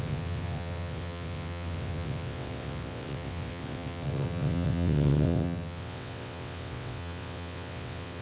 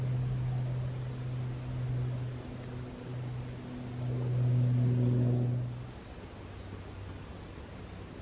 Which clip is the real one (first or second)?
second